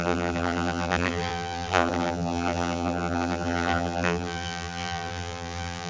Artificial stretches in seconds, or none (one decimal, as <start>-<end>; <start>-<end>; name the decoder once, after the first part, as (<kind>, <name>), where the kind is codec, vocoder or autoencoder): 0.0-5.9 (vocoder, BigVGAN v2)